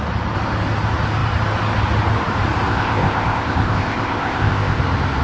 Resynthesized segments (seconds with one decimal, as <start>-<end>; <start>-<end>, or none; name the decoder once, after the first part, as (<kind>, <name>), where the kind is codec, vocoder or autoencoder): 2.7-4.8 (codec, ZipCodec)